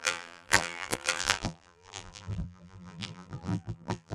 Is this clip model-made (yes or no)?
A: yes